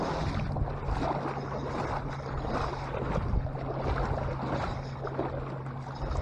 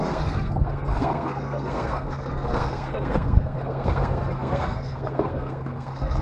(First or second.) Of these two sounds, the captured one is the first